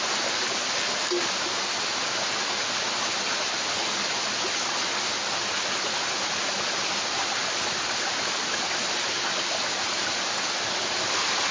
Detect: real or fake real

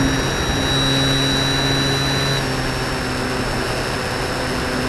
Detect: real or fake real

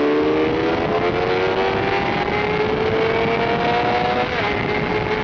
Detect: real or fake real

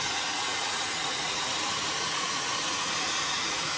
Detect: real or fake fake